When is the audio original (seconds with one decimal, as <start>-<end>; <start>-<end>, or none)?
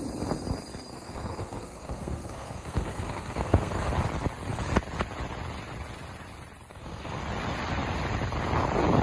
0.0-0.9; 3.9-6.7; 7.2-9.0